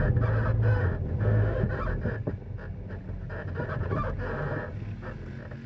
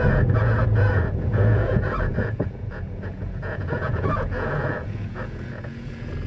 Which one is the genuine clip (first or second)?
first